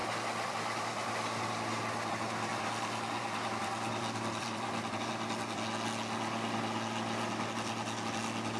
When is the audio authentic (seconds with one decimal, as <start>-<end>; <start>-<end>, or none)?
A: 2.1-2.5; 5.1-8.6